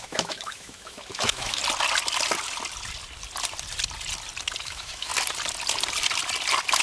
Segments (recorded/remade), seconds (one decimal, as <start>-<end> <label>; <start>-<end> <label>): 0.0-1.6 remade; 1.6-4.6 recorded; 4.6-5.1 remade; 5.1-6.8 recorded